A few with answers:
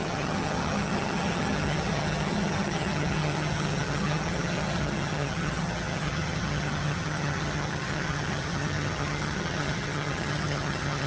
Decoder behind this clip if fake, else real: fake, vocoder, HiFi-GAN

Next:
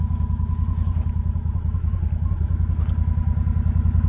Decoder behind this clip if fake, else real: real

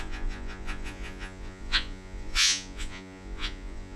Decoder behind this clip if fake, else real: fake, vocoder, Vocos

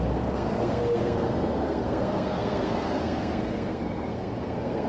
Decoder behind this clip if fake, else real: fake, codec, SNAC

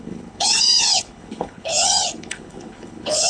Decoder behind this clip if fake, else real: fake, codec, HILCodec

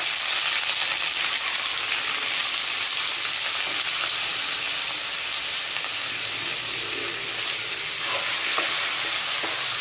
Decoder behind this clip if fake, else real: real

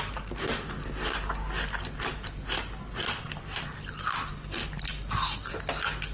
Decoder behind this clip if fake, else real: real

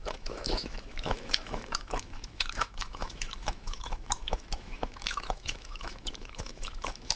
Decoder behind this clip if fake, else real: fake, autoencoder, DAC-VAE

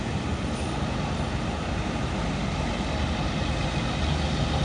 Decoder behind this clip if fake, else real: real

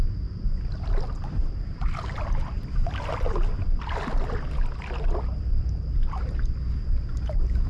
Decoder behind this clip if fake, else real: real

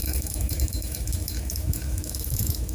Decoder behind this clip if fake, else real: fake, autoencoder, DAC-VAE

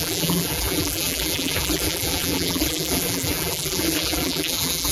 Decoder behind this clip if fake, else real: fake, vocoder, BigVGAN v2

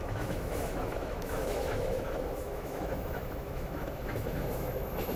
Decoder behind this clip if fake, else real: fake, autoencoder, DAC-VAE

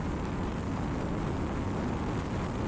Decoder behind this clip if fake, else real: real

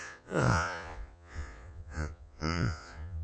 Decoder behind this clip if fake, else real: fake, vocoder, Vocos